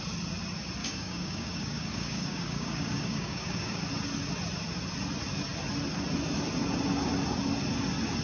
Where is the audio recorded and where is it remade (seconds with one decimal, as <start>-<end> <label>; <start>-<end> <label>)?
0.0-0.8 recorded; 0.8-3.8 remade; 3.8-8.2 recorded